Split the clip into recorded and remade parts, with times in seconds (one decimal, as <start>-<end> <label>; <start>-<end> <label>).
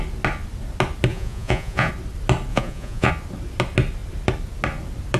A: 0.0-1.1 recorded; 1.1-1.9 remade; 1.9-2.5 recorded; 2.5-3.1 remade; 3.1-5.2 recorded